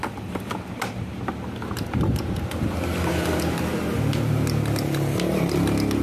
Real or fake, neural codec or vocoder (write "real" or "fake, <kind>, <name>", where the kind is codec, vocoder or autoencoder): real